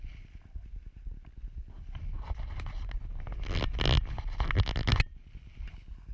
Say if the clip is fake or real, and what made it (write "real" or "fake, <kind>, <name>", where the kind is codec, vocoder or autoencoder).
real